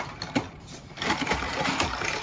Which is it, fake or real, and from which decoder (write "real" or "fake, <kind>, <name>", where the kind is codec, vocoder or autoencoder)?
fake, vocoder, BigVGAN v2